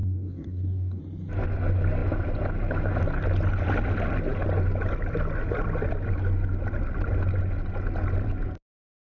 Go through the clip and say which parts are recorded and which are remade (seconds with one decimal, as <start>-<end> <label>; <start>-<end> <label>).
0.0-1.0 remade; 1.0-9.0 recorded